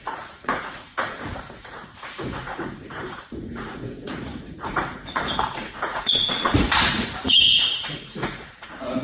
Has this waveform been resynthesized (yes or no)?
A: yes